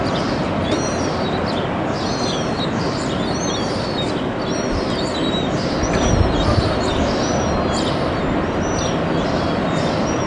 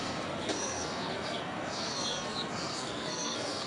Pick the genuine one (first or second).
first